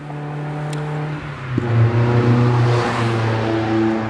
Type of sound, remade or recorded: recorded